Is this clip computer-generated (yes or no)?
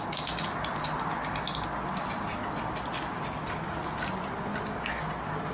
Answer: no